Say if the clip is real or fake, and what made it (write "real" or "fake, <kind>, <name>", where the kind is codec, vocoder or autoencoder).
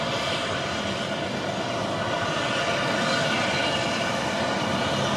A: real